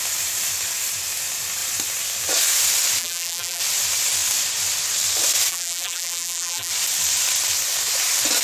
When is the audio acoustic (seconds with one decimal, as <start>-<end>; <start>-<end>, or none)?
0.0-3.0; 3.6-5.5; 6.7-8.4